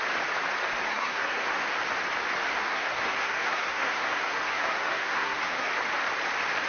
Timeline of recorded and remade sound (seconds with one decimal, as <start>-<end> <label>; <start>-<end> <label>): 0.0-0.9 recorded; 0.9-1.6 remade; 1.6-2.5 recorded; 2.5-5.7 remade; 5.7-6.7 recorded